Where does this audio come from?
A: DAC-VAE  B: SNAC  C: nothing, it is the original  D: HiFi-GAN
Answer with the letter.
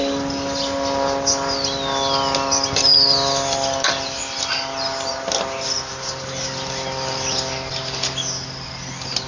C